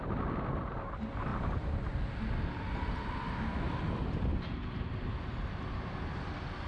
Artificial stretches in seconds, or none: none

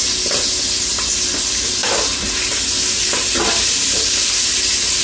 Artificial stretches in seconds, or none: 0.9-1.8 (vocoder, BigVGAN v2)